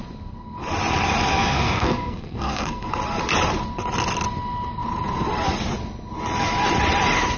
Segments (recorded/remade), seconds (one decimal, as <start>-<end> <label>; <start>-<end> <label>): 0.0-1.4 recorded; 1.4-2.9 remade; 2.9-7.4 recorded